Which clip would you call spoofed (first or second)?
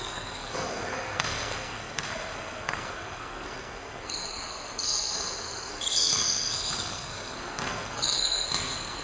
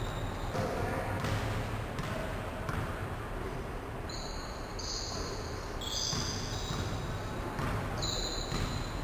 first